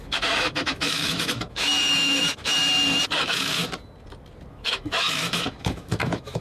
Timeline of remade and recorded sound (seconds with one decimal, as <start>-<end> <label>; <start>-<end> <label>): 0.0-2.6 remade; 2.6-3.2 recorded; 3.2-3.6 remade; 3.6-4.5 recorded; 4.5-6.4 remade

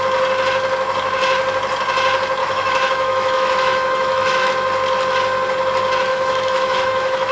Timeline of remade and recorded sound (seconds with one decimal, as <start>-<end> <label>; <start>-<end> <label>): 0.0-2.4 recorded; 2.4-4.5 remade; 4.5-6.1 recorded; 6.1-7.3 remade

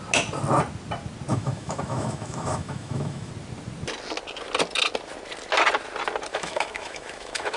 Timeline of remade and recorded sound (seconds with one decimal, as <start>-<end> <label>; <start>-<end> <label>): 0.0-1.3 recorded; 1.3-3.3 remade; 3.3-6.3 recorded; 6.3-7.6 remade